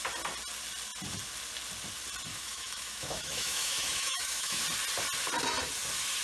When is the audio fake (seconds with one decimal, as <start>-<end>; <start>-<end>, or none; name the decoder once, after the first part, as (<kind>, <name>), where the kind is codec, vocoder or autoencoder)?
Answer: 2.3-4.6 (autoencoder, DAC-VAE)